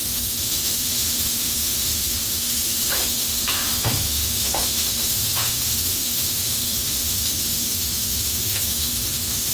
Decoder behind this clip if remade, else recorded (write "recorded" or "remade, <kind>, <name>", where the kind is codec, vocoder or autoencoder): remade, autoencoder, DAC-VAE